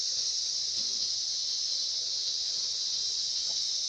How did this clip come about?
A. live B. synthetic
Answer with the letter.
B